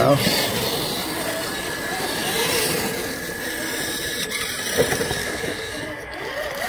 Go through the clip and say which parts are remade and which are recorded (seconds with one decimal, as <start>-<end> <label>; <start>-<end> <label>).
0.0-5.2 recorded; 5.2-6.3 remade; 6.3-6.7 recorded